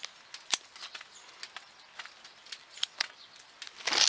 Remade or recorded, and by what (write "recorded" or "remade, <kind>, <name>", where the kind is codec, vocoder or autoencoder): recorded